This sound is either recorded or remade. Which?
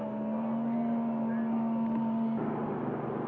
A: recorded